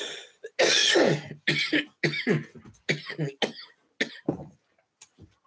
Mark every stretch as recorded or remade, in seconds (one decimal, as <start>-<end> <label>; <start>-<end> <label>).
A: 0.0-5.5 recorded